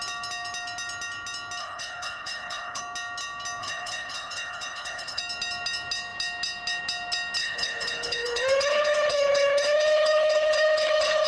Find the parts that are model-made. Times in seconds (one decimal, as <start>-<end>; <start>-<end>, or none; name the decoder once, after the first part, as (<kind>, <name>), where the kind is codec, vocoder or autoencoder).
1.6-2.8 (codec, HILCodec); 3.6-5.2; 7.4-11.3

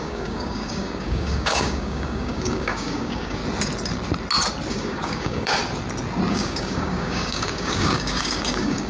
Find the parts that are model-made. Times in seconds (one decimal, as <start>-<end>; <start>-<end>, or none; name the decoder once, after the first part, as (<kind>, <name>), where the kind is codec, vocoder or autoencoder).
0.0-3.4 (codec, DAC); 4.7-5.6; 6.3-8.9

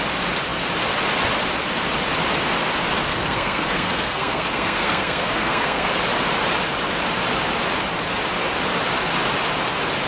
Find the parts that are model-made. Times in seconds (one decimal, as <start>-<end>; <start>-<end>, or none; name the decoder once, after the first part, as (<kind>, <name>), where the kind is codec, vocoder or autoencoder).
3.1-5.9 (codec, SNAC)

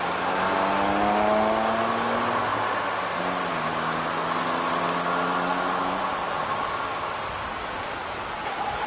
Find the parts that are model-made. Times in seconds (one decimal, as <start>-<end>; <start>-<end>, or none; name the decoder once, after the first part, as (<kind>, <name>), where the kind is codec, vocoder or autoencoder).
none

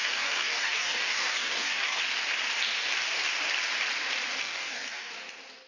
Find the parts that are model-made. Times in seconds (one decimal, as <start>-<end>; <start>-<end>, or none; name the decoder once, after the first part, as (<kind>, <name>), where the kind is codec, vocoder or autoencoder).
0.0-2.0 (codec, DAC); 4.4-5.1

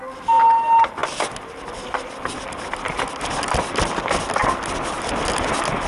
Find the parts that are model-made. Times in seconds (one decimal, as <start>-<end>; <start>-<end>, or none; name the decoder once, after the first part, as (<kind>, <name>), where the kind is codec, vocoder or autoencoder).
none